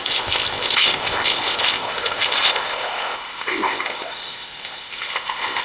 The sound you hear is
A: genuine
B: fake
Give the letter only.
B